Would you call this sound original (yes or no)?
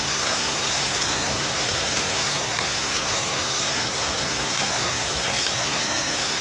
no